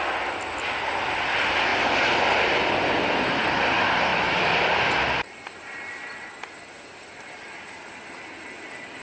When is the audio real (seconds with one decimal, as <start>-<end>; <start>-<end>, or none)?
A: 0.0-4.1; 6.3-9.0